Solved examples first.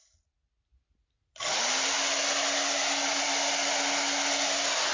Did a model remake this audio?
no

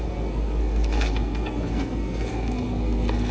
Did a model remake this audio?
yes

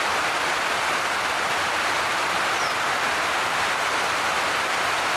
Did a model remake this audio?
no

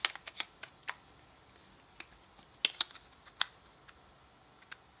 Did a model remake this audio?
no